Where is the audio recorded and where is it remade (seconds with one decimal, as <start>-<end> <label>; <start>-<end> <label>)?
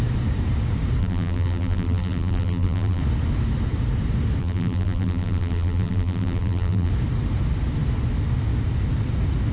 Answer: 0.0-1.0 recorded; 1.0-3.0 remade; 3.0-4.4 recorded; 4.4-6.9 remade; 6.9-9.5 recorded